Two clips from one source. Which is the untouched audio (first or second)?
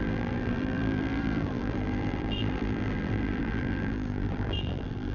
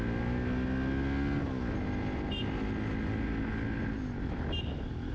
second